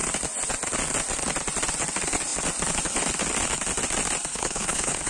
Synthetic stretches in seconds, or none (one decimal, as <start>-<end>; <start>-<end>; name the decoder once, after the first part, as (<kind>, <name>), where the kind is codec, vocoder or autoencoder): 4.3-5.1 (codec, HILCodec)